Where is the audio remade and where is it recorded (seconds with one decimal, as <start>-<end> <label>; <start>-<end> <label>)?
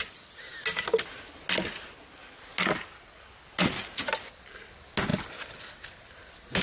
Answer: 0.0-6.6 recorded